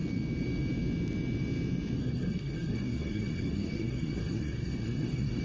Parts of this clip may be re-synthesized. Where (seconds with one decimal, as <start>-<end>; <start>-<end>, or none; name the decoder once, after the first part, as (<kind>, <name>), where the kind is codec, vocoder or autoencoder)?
2.0-5.4 (codec, SNAC)